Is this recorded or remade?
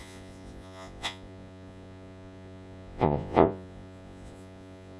remade